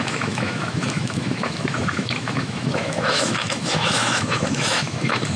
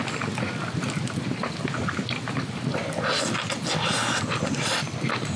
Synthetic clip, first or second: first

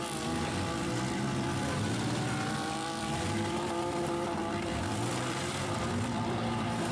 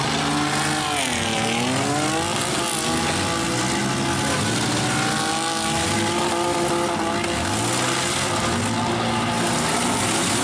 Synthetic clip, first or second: first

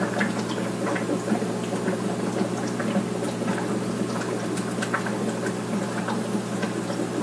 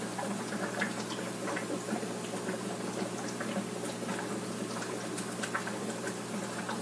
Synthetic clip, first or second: second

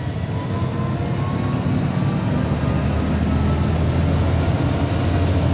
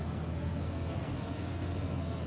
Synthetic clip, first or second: second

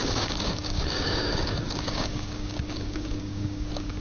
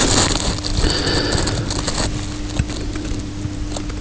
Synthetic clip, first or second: first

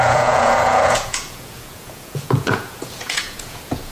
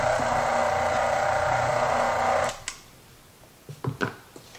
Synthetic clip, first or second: first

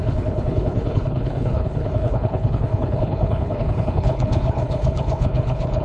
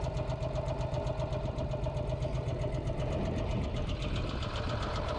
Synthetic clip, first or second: first